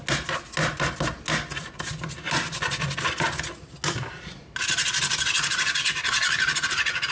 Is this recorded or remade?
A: recorded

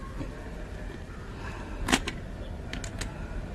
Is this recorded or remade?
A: recorded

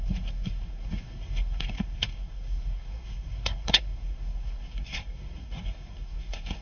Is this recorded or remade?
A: remade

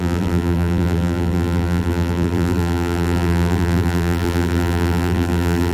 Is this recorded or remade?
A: remade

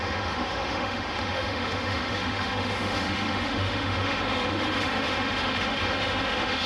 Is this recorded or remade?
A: remade